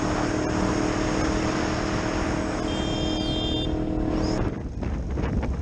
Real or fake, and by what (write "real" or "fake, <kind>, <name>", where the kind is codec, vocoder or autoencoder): real